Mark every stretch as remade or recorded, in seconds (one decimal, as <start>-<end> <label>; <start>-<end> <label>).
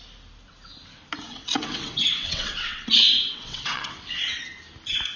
0.0-1.3 recorded; 1.3-4.4 remade; 4.4-5.2 recorded